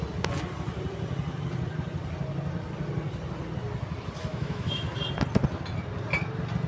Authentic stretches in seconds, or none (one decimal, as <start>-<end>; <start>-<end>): 0.0-4.3; 4.9-6.7